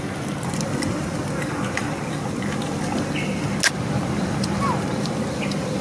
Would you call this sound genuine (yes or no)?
yes